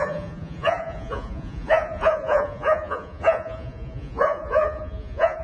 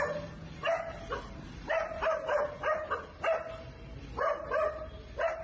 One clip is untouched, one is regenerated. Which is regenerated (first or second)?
first